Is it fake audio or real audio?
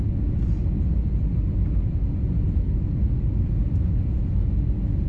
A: real